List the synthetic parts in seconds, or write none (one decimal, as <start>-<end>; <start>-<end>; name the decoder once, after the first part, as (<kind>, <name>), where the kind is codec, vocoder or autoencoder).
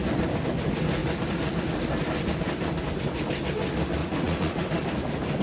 4.0-4.6 (vocoder, Vocos)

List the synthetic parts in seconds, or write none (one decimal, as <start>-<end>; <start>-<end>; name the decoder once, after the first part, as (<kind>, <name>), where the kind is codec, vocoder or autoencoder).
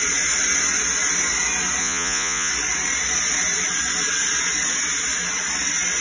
1.8-2.5 (vocoder, Vocos)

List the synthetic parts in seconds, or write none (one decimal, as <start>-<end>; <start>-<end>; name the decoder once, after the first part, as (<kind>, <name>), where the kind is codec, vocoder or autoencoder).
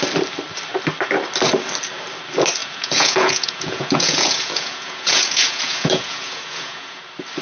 2.6-7.0 (vocoder, Vocos)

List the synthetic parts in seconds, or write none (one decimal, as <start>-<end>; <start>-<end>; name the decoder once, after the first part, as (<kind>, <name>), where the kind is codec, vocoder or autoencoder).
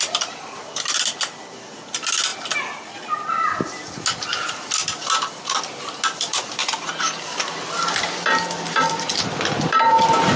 none